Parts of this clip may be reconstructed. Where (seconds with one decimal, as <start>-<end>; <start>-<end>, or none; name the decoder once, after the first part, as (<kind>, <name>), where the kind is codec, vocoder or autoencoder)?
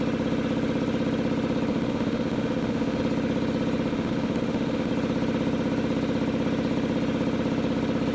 1.7-3.0 (autoencoder, DAC-VAE); 3.9-4.9